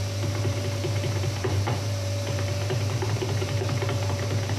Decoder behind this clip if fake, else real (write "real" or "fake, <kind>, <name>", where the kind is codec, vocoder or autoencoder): fake, vocoder, BigVGAN v2